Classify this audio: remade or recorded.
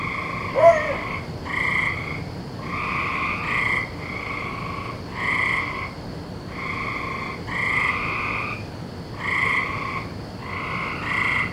recorded